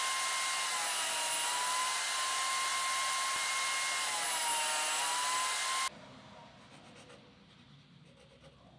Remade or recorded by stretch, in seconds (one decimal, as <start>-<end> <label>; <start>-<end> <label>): 0.0-2.7 recorded; 2.7-3.5 remade; 3.5-8.8 recorded

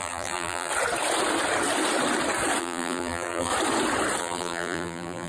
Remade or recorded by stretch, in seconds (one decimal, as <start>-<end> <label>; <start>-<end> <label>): 0.0-0.7 remade; 0.7-2.6 recorded; 2.6-3.5 remade; 3.5-4.2 recorded; 4.2-5.3 remade

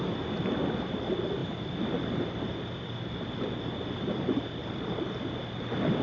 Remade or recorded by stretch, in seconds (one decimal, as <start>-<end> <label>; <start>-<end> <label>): 0.0-4.6 recorded; 4.6-5.6 remade; 5.6-6.0 recorded